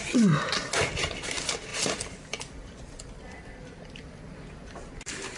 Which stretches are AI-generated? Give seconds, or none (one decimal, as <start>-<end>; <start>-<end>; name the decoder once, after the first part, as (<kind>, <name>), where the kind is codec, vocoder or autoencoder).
1.7-4.9 (vocoder, BigVGAN v2)